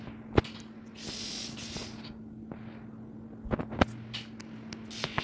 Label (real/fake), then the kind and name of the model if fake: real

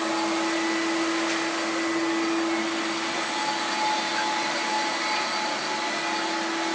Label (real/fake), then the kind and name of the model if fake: real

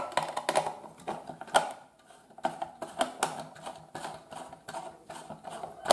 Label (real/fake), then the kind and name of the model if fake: real